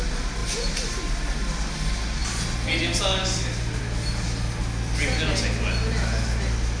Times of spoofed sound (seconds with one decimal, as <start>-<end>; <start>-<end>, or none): none